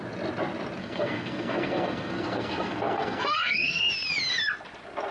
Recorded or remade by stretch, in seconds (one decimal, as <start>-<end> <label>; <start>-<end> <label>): 0.0-0.8 recorded; 0.8-3.9 remade; 3.9-5.1 recorded